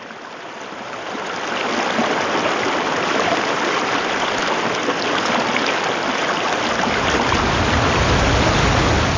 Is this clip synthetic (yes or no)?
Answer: no